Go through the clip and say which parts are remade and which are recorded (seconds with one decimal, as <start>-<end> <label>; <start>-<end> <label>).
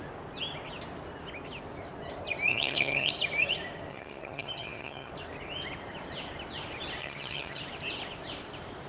0.0-2.5 recorded; 2.5-3.1 remade; 3.1-3.9 recorded; 3.9-5.1 remade; 5.1-7.0 recorded; 7.0-7.6 remade; 7.6-8.9 recorded